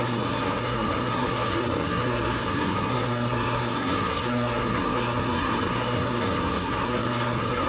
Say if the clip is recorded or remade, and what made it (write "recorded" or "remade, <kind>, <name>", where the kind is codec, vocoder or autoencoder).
remade, codec, SNAC